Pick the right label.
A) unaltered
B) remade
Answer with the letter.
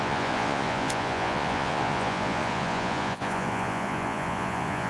B